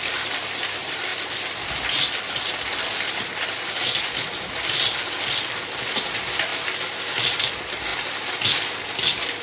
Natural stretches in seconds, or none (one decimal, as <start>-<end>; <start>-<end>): 0.0-9.4